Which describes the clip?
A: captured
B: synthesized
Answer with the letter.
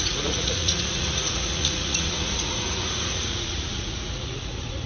B